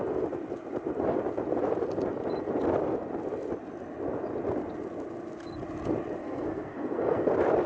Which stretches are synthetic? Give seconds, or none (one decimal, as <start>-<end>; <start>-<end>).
6.2-7.3